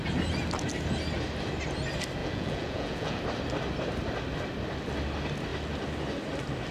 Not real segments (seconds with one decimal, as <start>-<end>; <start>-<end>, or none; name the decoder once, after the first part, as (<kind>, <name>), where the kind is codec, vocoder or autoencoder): 2.2-3.2 (vocoder, Vocos)

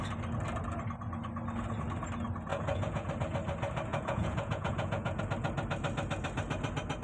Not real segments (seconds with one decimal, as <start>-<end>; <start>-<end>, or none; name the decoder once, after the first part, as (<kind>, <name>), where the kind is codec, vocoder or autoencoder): 2.5-3.1 (vocoder, Vocos); 3.9-5.2

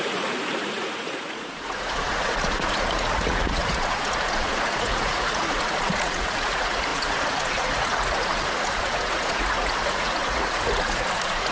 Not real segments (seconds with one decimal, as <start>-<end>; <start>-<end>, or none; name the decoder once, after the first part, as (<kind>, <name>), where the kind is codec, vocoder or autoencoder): 0.0-11.5 (vocoder, Vocos)